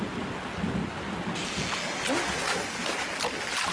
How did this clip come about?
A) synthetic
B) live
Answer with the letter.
B